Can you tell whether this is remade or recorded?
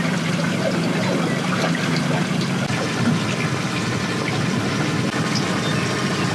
recorded